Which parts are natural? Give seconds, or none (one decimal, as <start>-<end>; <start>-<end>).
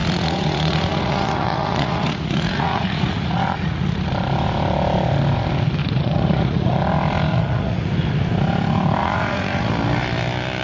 4.0-5.8; 6.8-7.3; 7.9-9.0; 9.7-10.6